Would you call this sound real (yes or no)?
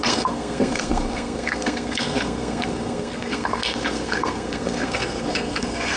no